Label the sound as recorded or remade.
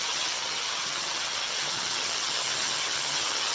remade